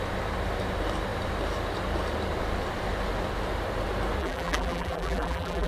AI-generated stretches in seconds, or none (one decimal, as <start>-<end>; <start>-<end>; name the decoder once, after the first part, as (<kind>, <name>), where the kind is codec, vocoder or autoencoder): 4.2-5.7 (vocoder, BigVGAN v2)